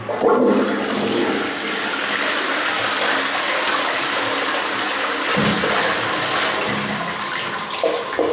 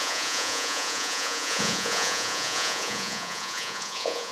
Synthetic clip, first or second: second